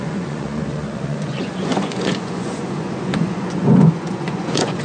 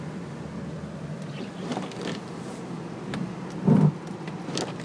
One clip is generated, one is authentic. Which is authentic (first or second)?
second